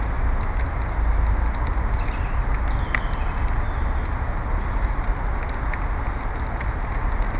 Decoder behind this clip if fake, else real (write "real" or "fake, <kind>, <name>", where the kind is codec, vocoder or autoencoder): real